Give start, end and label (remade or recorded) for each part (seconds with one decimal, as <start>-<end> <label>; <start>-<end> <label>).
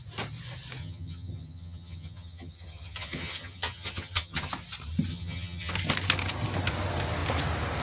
0.0-0.8 recorded; 0.8-4.5 remade; 4.5-5.1 recorded; 5.1-5.7 remade; 5.7-7.8 recorded